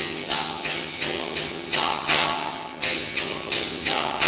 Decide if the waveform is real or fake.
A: fake